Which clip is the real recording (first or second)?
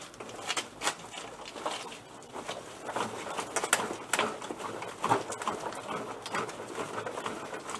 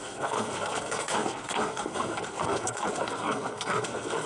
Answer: first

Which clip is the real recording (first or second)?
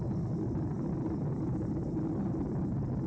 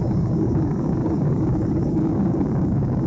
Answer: first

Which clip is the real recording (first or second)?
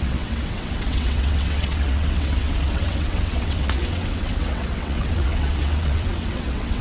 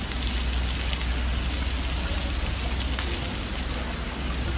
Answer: second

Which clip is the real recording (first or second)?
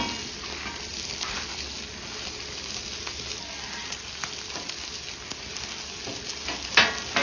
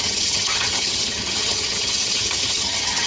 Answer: first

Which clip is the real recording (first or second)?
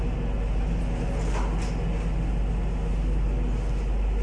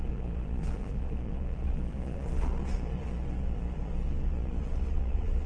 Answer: first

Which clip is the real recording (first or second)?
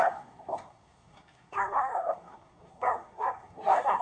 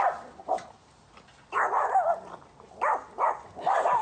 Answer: second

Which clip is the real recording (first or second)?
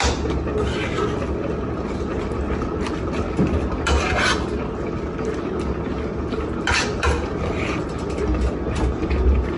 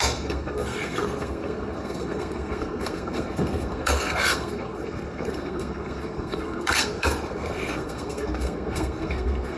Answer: first